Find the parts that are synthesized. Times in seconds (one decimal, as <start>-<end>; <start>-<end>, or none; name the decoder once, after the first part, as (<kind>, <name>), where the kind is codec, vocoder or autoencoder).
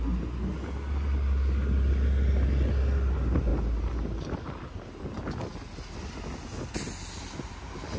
none